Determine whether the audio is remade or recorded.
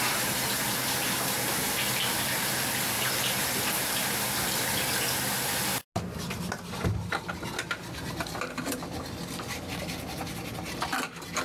recorded